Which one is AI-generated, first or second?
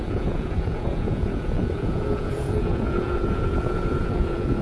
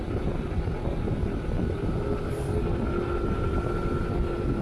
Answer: first